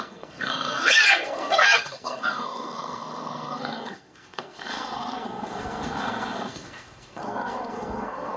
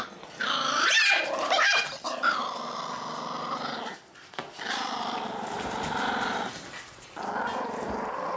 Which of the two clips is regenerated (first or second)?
first